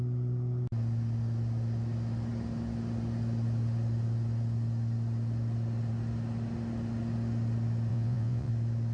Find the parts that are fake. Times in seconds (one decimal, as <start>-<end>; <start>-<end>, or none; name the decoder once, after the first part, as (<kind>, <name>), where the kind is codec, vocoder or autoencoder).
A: 7.9-8.5 (vocoder, Vocos)